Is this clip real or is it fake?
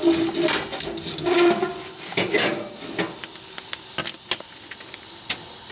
real